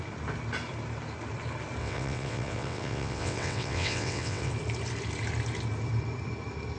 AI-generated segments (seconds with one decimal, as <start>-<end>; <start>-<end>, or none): 1.8-4.5